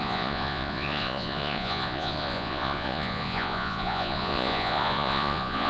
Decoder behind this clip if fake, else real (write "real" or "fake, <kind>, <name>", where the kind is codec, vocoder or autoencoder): fake, vocoder, Vocos